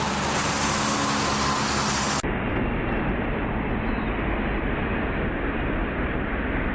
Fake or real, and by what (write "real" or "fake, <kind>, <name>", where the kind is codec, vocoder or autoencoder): real